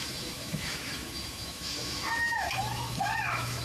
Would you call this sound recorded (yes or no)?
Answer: no